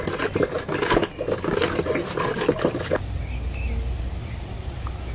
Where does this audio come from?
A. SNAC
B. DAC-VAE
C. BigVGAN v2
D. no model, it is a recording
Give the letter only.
D